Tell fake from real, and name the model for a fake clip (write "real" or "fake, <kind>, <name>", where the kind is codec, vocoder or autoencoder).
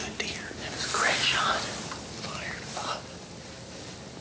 real